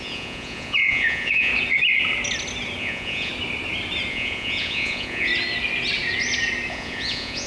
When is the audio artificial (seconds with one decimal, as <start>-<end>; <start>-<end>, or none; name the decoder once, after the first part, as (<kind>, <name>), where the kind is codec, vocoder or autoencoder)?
0.0-1.5 (vocoder, Vocos); 2.8-3.3; 4.1-5.3; 6.7-7.5